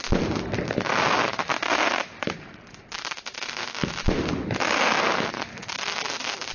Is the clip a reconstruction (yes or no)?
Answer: no